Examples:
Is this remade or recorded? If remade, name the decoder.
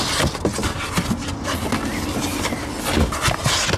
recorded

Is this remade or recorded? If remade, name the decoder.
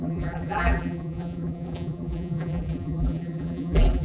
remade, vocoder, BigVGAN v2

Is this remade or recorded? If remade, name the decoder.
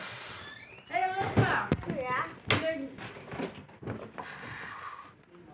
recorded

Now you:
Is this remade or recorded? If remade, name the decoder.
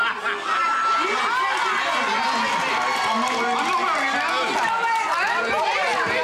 recorded